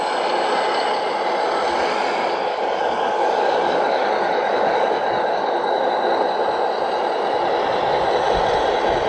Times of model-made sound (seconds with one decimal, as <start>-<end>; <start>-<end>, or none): 2.2-5.8